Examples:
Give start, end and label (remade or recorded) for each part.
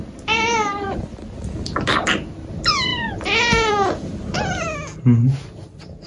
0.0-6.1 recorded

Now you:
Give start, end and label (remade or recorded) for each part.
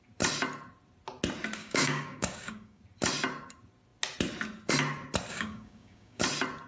0.0-1.6 recorded; 1.6-2.8 remade; 2.8-5.3 recorded; 5.3-6.2 remade; 6.2-6.7 recorded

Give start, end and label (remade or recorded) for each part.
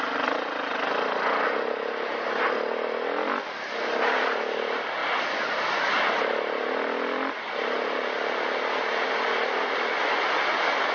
0.0-10.9 recorded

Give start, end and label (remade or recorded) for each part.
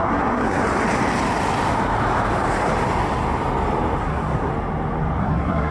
0.0-0.6 remade; 0.6-4.0 recorded; 4.0-4.5 remade; 4.5-5.2 recorded; 5.2-5.7 remade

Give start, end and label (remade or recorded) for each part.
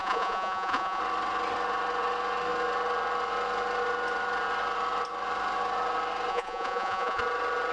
0.0-1.0 remade; 1.0-6.3 recorded; 6.3-7.2 remade; 7.2-7.7 recorded